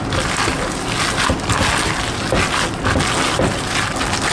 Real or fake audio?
real